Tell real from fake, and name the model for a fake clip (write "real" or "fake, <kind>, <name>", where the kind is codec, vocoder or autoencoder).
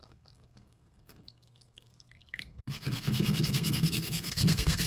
fake, codec, SNAC